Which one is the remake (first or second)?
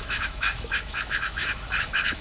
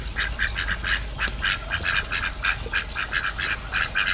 first